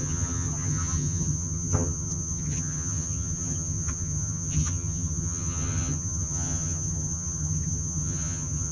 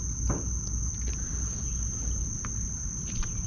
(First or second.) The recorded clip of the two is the second